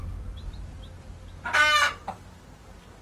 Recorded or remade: recorded